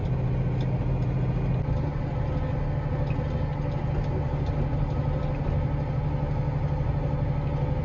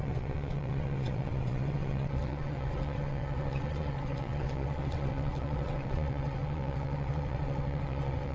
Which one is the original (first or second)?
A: first